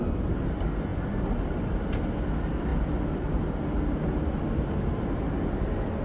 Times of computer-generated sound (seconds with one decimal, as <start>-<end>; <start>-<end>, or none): none